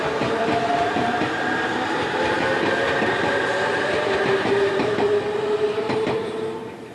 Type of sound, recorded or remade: remade